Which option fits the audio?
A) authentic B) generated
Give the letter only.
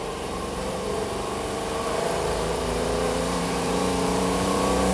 B